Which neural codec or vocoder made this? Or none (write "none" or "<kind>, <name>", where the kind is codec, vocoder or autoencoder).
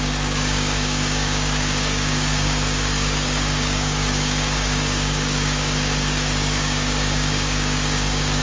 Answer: codec, DAC